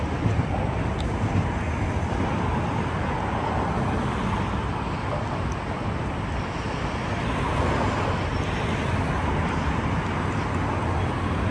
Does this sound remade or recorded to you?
recorded